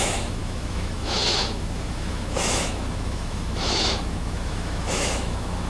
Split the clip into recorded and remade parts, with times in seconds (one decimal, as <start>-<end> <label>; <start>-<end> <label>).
0.0-5.7 remade